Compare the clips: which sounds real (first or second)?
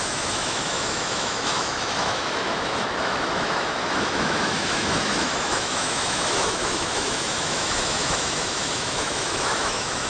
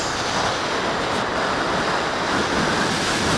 second